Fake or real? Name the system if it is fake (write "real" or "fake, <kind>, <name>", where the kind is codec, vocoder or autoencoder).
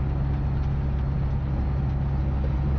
real